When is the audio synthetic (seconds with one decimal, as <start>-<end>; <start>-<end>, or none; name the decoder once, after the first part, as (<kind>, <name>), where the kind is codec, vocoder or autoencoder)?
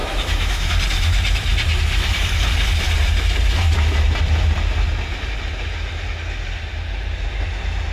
0.0-0.7 (autoencoder, DAC-VAE)